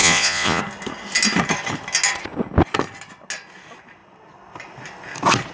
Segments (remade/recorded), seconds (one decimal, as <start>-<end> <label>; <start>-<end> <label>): 0.0-0.6 remade; 0.6-5.5 recorded